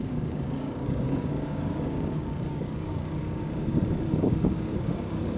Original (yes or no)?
no